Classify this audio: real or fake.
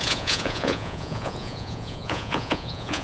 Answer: fake